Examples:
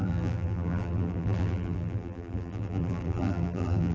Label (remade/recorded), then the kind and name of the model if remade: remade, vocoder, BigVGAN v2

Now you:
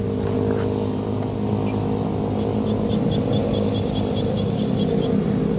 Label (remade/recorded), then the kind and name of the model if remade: recorded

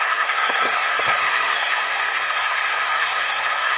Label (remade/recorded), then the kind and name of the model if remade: remade, codec, SNAC